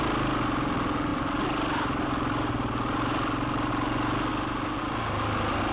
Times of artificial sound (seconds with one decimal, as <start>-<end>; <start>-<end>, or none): 1.1-3.7